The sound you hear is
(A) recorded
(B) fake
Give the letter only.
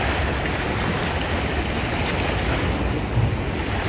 A